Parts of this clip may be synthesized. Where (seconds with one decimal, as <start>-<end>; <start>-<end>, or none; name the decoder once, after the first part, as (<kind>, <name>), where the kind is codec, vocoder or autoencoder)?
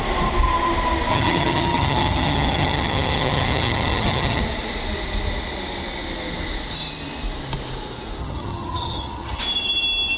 1.1-4.4 (vocoder, HiFi-GAN); 8.2-9.4